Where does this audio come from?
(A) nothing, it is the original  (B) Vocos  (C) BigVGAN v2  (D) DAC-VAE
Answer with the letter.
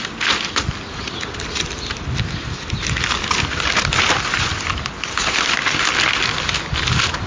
A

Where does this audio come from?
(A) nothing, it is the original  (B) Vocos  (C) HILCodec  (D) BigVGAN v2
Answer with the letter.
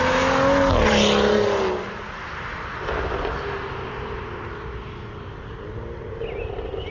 A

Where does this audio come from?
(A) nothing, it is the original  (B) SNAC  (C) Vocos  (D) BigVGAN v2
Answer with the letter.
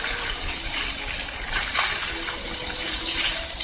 A